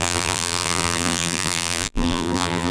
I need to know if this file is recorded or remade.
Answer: remade